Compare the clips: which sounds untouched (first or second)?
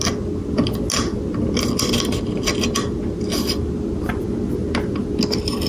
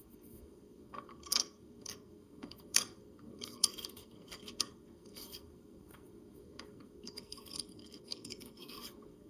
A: first